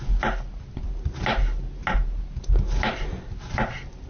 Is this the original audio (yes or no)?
yes